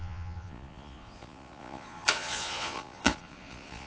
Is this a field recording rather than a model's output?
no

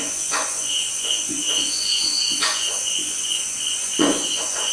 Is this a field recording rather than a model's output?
no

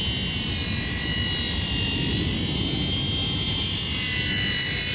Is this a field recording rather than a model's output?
yes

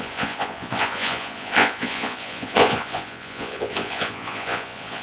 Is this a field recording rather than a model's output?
no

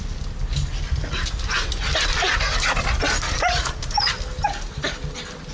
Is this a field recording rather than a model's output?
yes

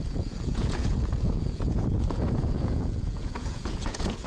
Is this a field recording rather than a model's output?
no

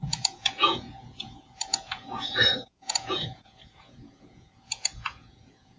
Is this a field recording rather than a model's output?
no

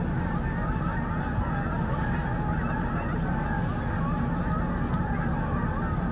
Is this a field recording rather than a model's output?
yes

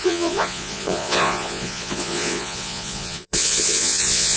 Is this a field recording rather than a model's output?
no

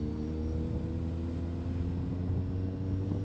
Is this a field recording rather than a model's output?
yes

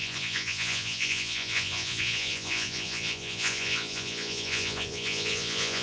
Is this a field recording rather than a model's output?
no